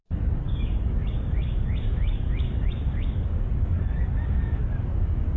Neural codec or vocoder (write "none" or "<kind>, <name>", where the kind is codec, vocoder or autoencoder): codec, DAC